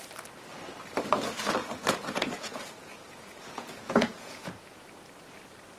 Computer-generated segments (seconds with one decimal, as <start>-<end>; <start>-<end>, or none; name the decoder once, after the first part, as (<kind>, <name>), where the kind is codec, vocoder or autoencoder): 1.6-4.9 (vocoder, Vocos)